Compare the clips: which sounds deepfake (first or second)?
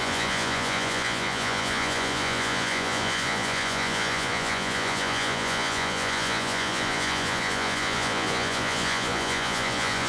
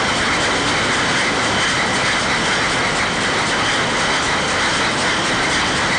first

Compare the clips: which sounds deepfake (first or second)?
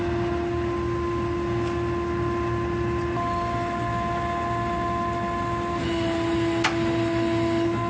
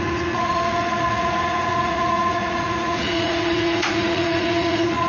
second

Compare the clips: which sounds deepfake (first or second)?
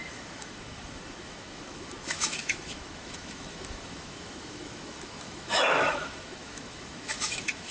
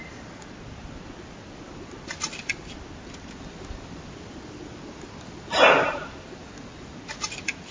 first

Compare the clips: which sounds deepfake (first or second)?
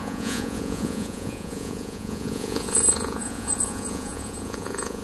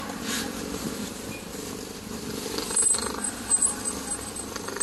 first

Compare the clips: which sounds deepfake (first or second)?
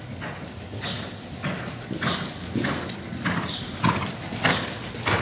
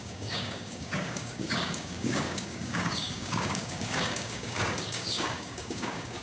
second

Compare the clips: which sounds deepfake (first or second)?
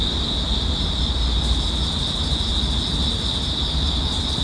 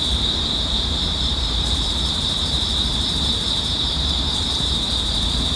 second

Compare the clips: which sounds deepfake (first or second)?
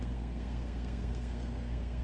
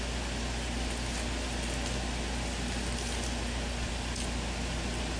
first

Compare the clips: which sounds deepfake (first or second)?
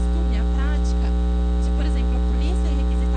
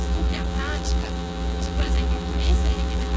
second